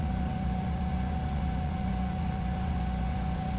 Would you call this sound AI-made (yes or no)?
yes